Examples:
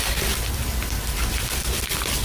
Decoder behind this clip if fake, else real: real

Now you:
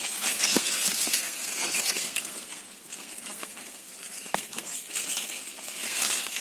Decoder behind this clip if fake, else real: fake, codec, SNAC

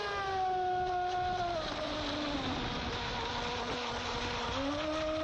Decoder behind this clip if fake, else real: real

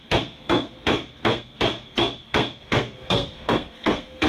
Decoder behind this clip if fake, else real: fake, codec, SNAC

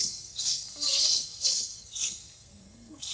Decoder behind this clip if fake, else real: fake, codec, SNAC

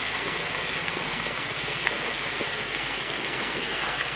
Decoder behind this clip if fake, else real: fake, codec, SNAC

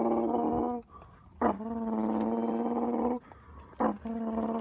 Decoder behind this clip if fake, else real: real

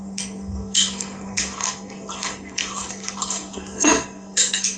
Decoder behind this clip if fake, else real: fake, codec, SNAC